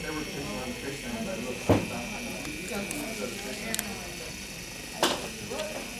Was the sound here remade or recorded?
recorded